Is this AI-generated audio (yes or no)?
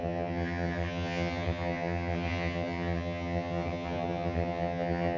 yes